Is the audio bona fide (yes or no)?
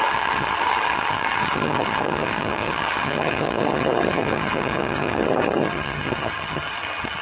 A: no